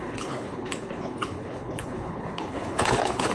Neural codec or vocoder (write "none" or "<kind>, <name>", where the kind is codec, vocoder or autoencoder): codec, HILCodec